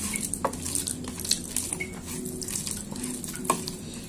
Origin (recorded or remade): recorded